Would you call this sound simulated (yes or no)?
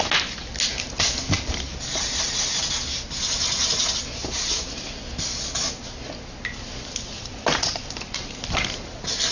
no